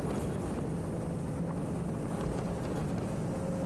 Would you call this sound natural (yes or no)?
yes